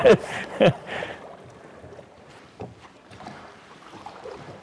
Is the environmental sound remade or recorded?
remade